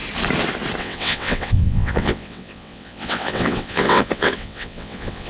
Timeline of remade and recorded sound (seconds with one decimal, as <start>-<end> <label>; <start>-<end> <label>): 0.0-0.8 recorded; 0.8-5.3 remade

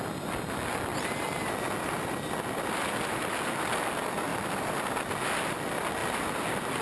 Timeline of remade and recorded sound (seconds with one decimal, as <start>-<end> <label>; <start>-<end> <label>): 0.0-4.3 recorded; 4.3-4.8 remade; 4.8-6.0 recorded; 6.0-6.8 remade

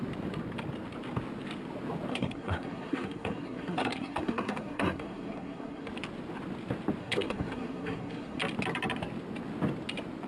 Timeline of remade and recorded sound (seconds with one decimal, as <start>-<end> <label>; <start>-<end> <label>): 0.0-2.1 recorded; 2.1-5.9 remade; 5.9-7.0 recorded; 7.0-8.4 remade; 8.4-10.3 recorded